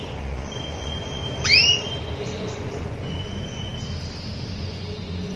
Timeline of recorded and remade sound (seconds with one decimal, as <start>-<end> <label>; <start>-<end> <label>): 0.0-1.2 remade; 1.2-2.2 recorded; 2.2-3.7 remade; 3.7-4.5 recorded; 4.5-5.4 remade